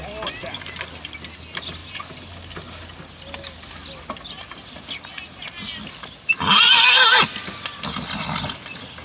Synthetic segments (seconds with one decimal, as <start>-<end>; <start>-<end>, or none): none